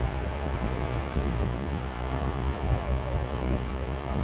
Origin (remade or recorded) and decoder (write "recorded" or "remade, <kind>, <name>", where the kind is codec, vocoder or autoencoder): remade, vocoder, Vocos